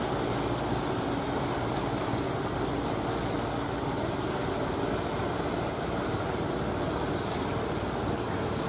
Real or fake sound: real